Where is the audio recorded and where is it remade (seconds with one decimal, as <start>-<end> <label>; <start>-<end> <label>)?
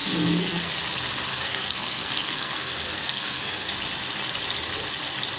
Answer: 0.0-0.7 remade; 0.7-1.3 recorded; 1.3-3.7 remade; 3.7-5.4 recorded